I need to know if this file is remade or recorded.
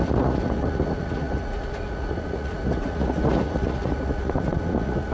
remade